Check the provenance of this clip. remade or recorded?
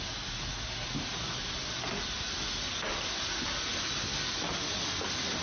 recorded